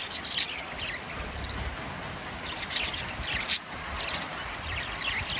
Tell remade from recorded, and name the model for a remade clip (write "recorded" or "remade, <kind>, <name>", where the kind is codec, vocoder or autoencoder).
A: recorded